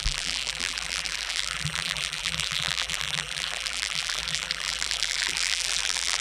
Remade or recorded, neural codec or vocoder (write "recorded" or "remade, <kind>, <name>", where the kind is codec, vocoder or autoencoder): remade, vocoder, BigVGAN v2